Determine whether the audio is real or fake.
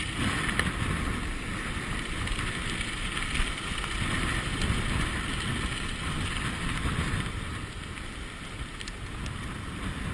real